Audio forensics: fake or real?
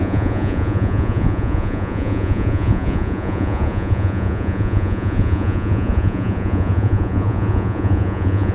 fake